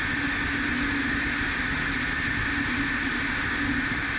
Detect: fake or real real